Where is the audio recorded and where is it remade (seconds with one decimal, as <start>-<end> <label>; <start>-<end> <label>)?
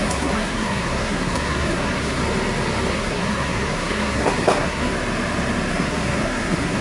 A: 0.0-2.2 remade; 2.2-2.9 recorded; 2.9-4.9 remade; 4.9-5.7 recorded; 5.7-6.8 remade